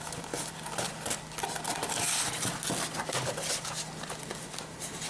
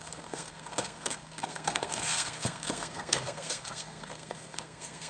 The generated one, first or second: second